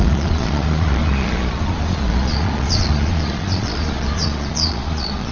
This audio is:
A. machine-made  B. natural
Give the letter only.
A